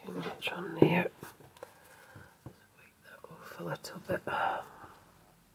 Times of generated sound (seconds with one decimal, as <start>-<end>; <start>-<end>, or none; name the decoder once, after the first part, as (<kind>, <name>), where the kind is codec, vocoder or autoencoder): none